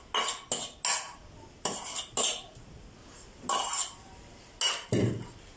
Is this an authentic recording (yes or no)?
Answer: yes